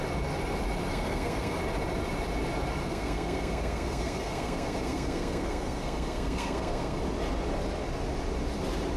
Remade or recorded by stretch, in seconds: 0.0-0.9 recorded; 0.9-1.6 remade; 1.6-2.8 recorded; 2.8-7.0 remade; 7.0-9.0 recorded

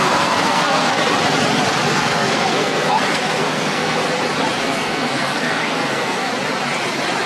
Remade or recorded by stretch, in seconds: 0.0-1.0 remade; 1.0-1.9 recorded; 1.9-4.0 remade; 4.0-4.6 recorded; 4.6-6.3 remade; 6.3-7.3 recorded

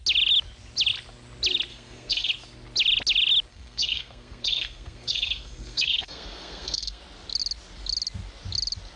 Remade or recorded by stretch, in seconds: 0.0-1.7 recorded; 1.7-2.3 remade; 2.3-3.5 recorded; 3.5-7.0 remade; 7.0-9.0 recorded